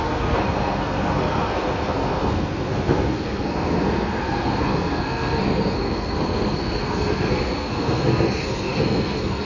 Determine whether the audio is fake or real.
fake